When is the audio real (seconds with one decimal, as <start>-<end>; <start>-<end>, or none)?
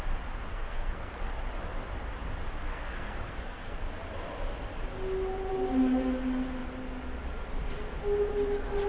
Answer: 0.0-0.5; 1.3-2.7; 3.9-8.9